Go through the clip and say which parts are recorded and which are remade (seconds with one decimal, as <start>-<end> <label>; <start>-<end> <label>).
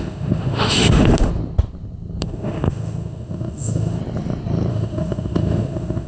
0.0-1.3 remade; 1.3-2.2 recorded; 2.2-4.0 remade; 4.0-4.7 recorded; 4.7-6.1 remade